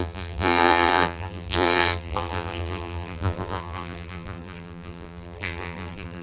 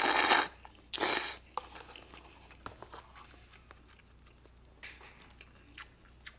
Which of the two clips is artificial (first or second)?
first